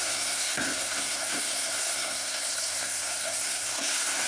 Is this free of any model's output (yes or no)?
no